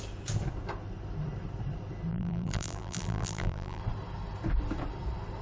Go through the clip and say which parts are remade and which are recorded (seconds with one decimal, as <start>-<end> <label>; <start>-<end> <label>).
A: 0.0-2.1 recorded; 2.1-3.8 remade; 3.8-5.4 recorded